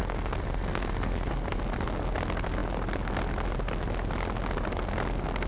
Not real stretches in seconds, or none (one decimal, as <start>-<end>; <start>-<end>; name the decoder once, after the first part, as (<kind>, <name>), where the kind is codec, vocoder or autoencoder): 0.0-1.3 (codec, SNAC)